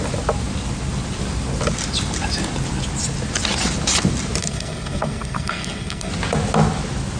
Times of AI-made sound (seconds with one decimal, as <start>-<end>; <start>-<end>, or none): 4.4-6.1